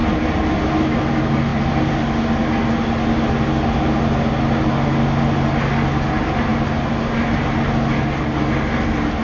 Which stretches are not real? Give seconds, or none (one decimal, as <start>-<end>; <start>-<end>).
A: 0.0-1.1